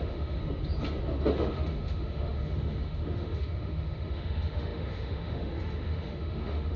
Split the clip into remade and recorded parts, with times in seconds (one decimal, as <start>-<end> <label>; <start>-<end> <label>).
0.0-0.4 remade; 0.4-1.3 recorded; 1.3-6.8 remade